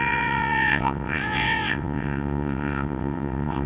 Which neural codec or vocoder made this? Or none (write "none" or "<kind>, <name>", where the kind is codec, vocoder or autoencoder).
vocoder, WaveNeXt